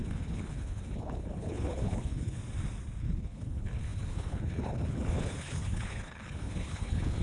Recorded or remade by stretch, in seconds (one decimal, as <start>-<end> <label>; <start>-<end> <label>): 0.0-2.4 remade; 2.4-3.0 recorded; 3.0-7.2 remade